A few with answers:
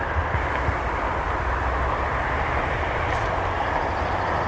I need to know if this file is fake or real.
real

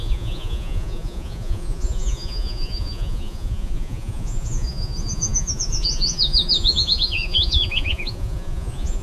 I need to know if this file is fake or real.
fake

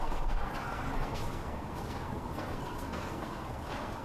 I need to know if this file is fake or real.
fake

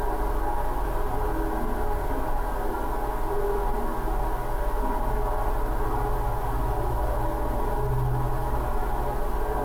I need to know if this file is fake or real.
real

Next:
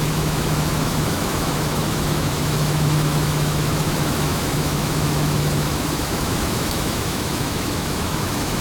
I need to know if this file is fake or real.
fake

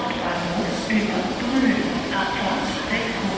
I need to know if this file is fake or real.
real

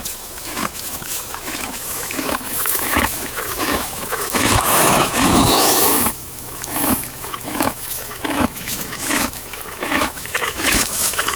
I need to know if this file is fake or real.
fake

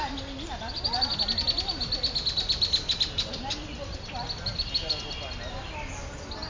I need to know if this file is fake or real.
real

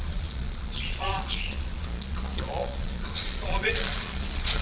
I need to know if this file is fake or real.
fake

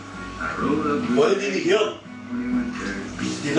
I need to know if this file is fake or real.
fake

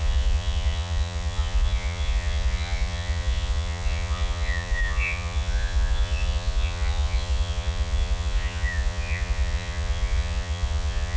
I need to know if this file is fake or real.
fake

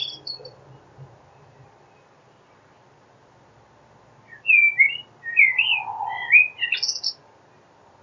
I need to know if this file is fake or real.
real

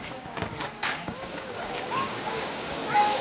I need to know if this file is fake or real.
fake